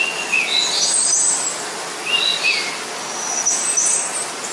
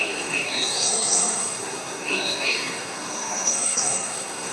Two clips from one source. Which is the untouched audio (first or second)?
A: first